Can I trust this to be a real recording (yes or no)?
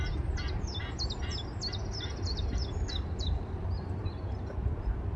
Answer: yes